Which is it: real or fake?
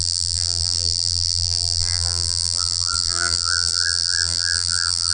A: fake